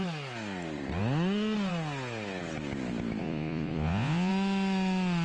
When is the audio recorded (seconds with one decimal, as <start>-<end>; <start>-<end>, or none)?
0.0-3.2; 4.3-5.2